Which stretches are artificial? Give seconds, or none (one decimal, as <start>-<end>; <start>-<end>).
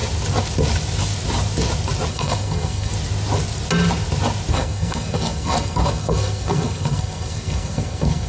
2.1-2.9; 4.5-8.3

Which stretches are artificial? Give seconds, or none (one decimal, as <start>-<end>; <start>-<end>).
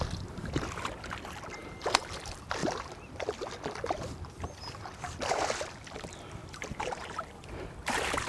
2.6-3.1; 6.4-8.3